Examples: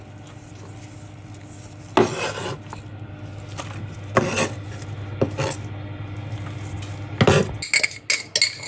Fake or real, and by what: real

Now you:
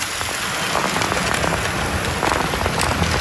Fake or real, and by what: real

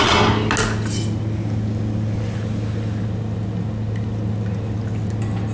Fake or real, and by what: real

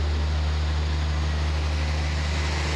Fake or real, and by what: real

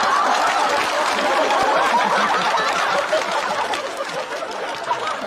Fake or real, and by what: real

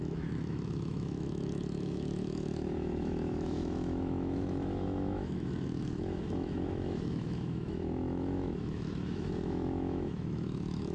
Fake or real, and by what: fake, autoencoder, DAC-VAE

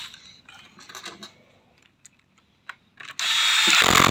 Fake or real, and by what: real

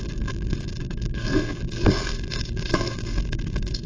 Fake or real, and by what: fake, codec, SNAC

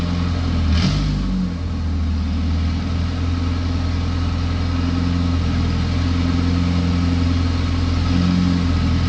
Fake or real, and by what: real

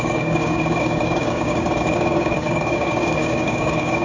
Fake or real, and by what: fake, codec, DAC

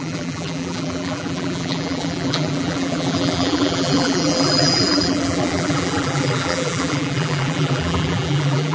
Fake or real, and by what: fake, vocoder, BigVGAN v2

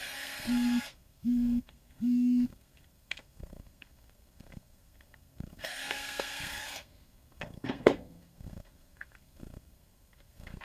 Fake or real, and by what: fake, codec, SNAC